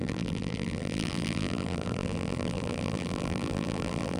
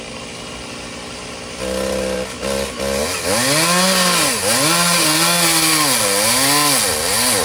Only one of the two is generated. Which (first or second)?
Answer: first